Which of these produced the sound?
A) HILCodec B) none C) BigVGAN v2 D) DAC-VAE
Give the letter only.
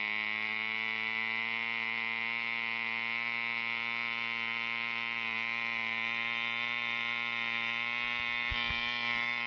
B